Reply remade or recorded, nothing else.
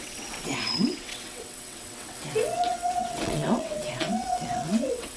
remade